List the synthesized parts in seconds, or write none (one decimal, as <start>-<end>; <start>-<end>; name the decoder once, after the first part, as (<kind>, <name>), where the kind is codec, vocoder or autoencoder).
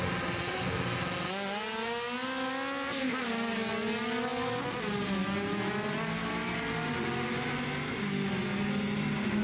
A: none